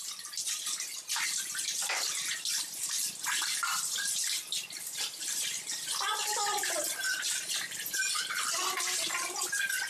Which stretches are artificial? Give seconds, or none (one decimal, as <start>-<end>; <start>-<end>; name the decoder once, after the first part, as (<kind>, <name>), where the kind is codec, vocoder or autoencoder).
none